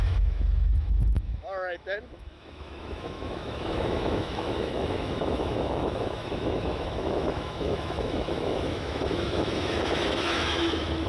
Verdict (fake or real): fake